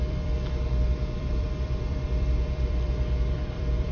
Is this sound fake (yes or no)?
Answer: yes